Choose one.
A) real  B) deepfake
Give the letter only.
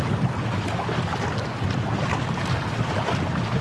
A